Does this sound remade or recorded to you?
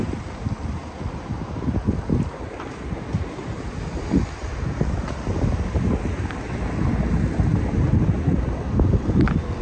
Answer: recorded